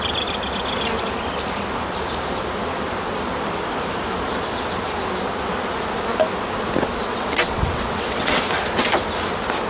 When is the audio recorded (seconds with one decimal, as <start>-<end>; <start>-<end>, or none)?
0.0-7.1; 8.4-9.7

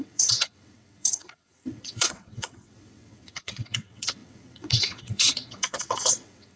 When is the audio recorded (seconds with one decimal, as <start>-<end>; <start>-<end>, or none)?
none

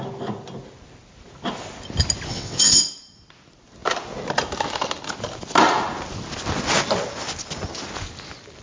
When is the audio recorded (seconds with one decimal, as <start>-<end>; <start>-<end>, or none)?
0.0-2.3; 2.8-8.6

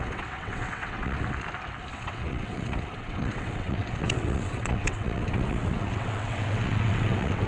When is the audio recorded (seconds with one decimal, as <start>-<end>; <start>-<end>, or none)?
1.2-1.9

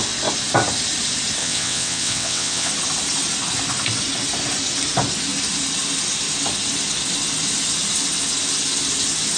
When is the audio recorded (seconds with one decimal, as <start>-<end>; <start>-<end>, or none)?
0.0-1.4; 2.7-9.4

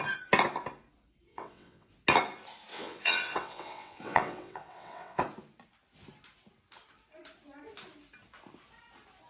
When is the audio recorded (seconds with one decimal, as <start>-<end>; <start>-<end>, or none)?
0.0-1.3; 1.9-2.7; 5.2-9.3

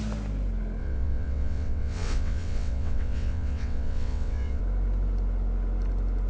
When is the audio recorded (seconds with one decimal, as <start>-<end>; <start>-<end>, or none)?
0.0-0.8; 4.6-6.3

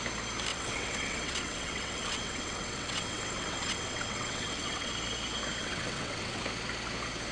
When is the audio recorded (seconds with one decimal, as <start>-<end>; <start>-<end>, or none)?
0.0-0.5; 4.9-5.6; 6.4-7.3